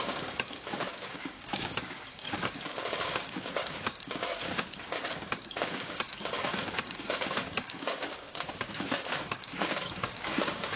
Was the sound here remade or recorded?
remade